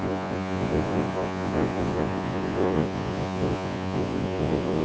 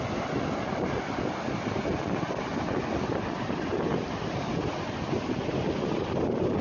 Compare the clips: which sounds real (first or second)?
second